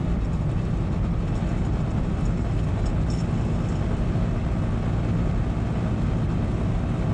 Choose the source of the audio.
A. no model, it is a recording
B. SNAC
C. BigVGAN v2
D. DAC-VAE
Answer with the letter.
A